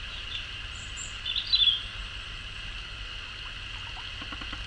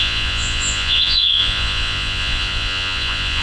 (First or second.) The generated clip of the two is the second